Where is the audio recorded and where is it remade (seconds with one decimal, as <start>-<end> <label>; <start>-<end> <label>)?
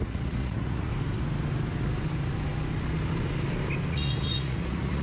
0.0-0.9 remade; 0.9-3.9 recorded; 3.9-5.0 remade